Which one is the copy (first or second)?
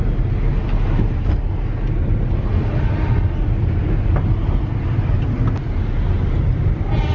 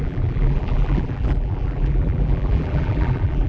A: second